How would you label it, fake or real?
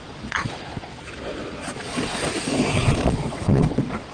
fake